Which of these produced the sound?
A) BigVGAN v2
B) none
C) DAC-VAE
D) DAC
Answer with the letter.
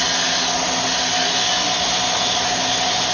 B